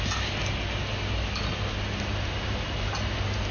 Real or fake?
real